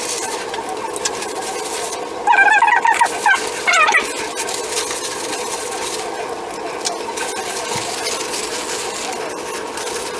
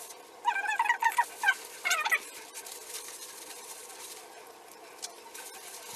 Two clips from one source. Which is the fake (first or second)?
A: second